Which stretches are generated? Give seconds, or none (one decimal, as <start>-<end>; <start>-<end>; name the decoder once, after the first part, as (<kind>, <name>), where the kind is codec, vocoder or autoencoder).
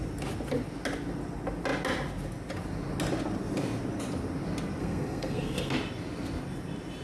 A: 4.8-5.7 (codec, SNAC)